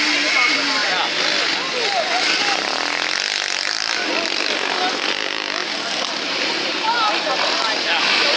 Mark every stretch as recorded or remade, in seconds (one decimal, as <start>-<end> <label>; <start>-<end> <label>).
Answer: 0.0-8.4 recorded